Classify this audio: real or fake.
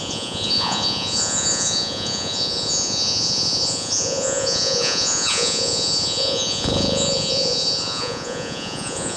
fake